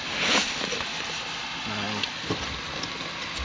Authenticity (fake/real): real